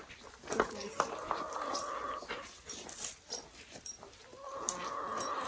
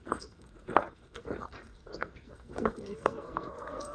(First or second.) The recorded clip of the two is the first